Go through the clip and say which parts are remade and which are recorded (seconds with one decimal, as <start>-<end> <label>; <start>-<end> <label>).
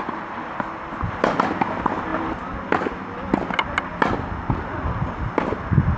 0.0-6.0 recorded